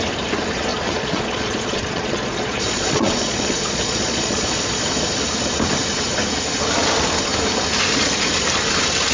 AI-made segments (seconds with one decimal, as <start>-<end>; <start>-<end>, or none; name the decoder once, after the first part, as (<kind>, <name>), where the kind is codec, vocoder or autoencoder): 0.7-4.8 (vocoder, Vocos)